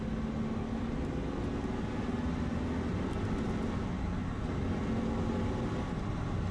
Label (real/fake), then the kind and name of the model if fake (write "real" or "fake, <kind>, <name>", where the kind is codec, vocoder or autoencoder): real